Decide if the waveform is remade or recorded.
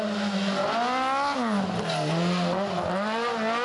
recorded